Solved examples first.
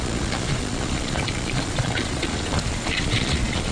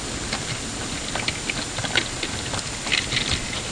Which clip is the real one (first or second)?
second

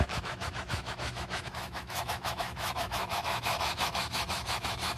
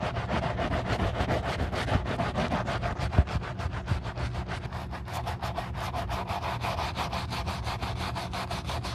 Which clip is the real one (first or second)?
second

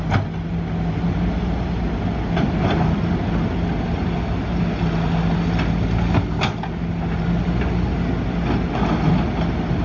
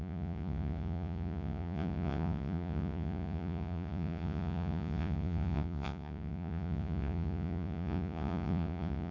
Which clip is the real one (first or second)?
first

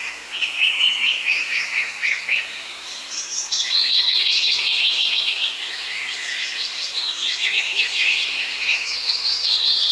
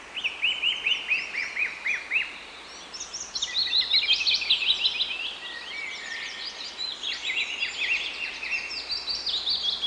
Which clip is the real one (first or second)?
second